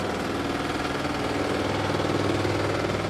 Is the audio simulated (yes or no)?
no